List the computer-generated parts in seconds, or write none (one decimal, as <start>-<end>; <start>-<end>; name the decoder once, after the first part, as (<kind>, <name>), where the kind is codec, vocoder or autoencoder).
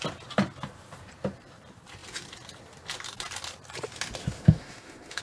4.2-5.2 (autoencoder, DAC-VAE)